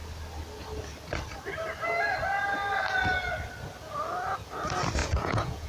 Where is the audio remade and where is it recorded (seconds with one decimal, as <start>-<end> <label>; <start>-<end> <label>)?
0.0-5.0 recorded; 5.0-5.7 remade